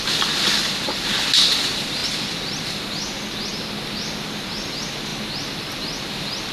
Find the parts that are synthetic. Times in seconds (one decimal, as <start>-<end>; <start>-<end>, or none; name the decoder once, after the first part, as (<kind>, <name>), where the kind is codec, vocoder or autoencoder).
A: none